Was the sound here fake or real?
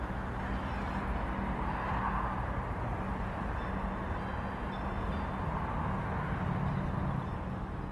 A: real